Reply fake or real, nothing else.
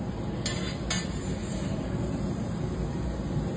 real